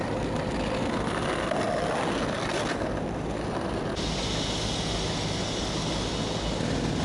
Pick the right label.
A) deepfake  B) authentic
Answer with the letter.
B